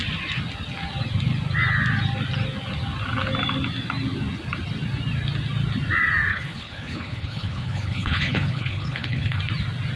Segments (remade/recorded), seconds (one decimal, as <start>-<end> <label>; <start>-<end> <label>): 0.0-6.3 recorded; 6.3-9.4 remade; 9.4-10.0 recorded